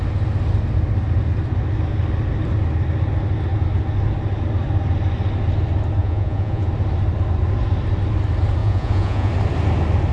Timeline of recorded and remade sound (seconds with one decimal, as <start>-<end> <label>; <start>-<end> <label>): 0.0-6.0 recorded; 6.0-6.7 remade; 6.7-8.6 recorded; 8.6-9.3 remade; 9.3-10.1 recorded

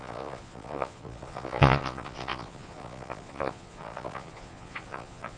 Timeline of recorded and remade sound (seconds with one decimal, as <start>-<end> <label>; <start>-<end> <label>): 0.0-5.4 remade